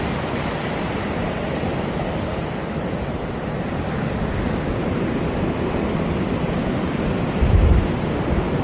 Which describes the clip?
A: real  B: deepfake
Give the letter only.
A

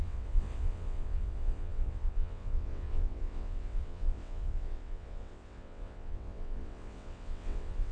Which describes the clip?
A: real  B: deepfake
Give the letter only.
B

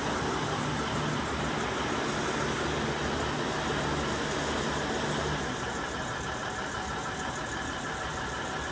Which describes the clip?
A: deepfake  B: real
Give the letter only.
B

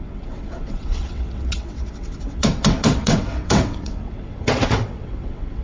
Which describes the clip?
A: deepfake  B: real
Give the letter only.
A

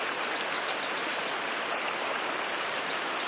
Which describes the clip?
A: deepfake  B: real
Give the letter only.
B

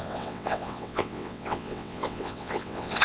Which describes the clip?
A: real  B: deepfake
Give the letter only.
B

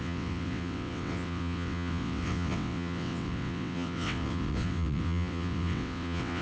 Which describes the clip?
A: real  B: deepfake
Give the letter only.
B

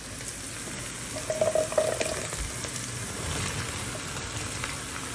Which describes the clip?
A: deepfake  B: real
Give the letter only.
B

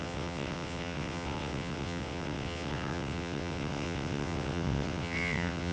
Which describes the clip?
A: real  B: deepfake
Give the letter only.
B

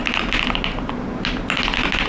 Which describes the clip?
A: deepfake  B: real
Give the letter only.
B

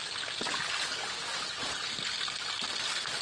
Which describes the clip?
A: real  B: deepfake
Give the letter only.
A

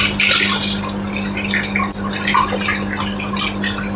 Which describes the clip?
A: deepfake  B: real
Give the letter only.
B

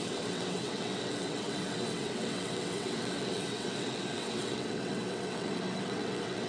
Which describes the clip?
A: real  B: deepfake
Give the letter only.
B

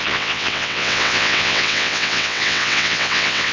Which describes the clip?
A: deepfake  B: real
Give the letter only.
A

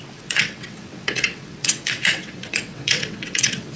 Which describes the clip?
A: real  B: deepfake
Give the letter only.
B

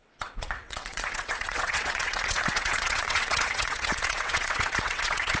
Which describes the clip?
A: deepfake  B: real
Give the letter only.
A